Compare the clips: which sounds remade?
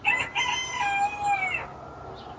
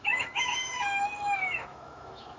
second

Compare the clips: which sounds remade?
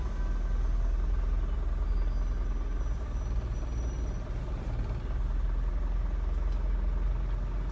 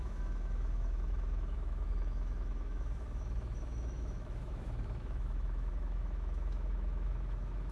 second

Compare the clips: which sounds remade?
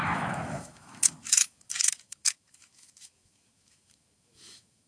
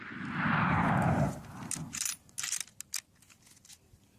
first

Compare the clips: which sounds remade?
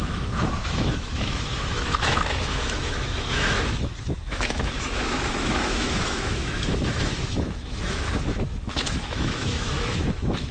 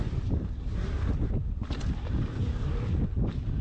first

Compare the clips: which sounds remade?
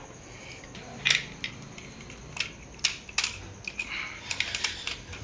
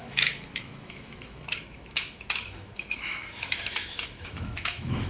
second